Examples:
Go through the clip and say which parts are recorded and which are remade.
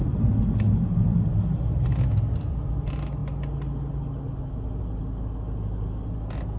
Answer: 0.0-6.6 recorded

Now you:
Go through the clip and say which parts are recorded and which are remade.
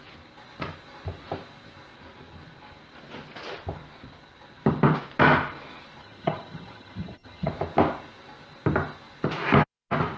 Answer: 0.0-6.0 recorded; 6.0-7.5 remade; 7.5-10.2 recorded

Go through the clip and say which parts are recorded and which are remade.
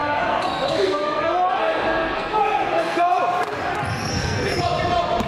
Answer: 0.0-3.2 remade; 3.2-4.0 recorded; 4.0-4.6 remade; 4.6-5.3 recorded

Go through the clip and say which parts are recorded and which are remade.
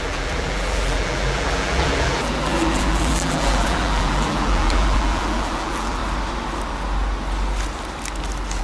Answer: 0.0-6.0 remade; 6.0-8.6 recorded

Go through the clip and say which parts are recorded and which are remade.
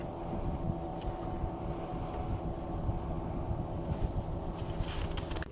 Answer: 0.0-0.9 recorded; 0.9-1.5 remade; 1.5-5.5 recorded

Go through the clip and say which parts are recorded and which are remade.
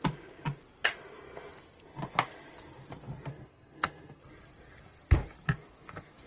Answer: 0.0-3.3 recorded; 3.3-4.2 remade; 4.2-6.3 recorded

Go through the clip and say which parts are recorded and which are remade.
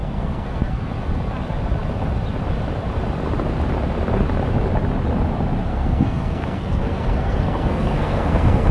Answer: 0.0-0.9 remade; 0.9-5.7 recorded; 5.7-8.7 remade